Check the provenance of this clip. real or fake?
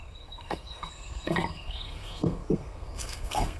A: fake